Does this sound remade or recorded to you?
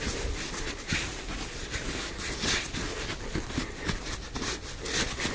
recorded